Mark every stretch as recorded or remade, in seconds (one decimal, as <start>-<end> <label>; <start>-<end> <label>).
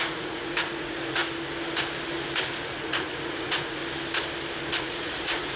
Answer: 0.0-1.2 remade; 1.2-2.4 recorded; 2.4-3.8 remade; 3.8-4.8 recorded; 4.8-5.6 remade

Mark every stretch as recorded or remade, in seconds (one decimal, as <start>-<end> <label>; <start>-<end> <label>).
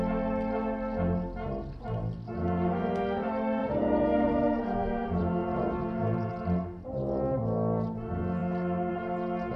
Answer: 0.0-3.6 recorded; 3.6-6.3 remade; 6.3-9.6 recorded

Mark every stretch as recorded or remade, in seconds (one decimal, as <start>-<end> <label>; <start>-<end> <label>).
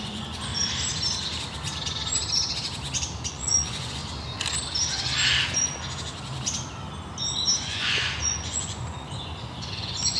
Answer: 0.0-0.5 remade; 0.5-3.3 recorded; 3.3-4.0 remade; 4.0-7.6 recorded; 7.6-10.2 remade